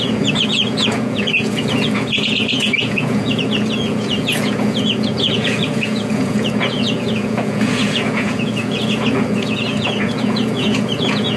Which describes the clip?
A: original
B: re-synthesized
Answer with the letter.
B